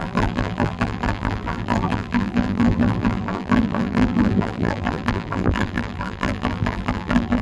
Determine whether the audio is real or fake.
fake